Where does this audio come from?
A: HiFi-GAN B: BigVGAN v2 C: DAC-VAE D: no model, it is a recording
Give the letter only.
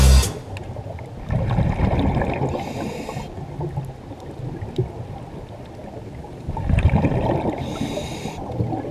D